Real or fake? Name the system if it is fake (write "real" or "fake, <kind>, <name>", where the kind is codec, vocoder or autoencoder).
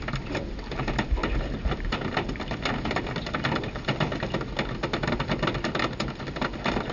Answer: real